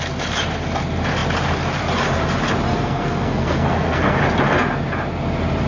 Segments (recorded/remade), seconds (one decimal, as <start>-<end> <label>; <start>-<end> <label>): 0.0-2.7 recorded; 2.7-4.2 remade; 4.2-5.7 recorded